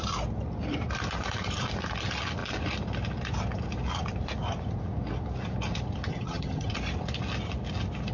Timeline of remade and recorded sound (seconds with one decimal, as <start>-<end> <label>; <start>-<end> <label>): 0.0-6.1 recorded; 6.1-6.7 remade; 6.7-8.1 recorded